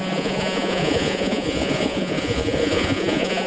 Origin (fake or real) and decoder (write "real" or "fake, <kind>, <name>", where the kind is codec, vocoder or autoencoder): fake, vocoder, Vocos